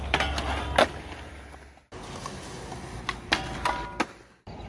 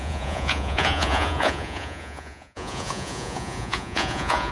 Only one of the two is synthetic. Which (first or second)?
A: second